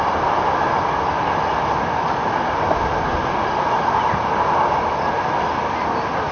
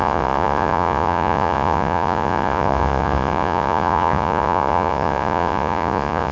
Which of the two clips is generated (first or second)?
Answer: second